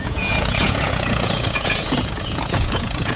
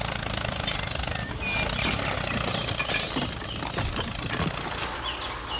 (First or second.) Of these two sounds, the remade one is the first